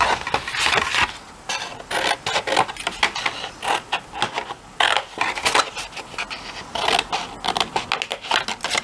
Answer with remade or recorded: recorded